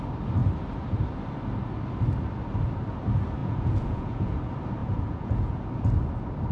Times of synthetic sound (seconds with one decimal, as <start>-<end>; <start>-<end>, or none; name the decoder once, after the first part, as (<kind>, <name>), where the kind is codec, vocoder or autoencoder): 3.4-4.3 (vocoder, Vocos); 4.8-5.7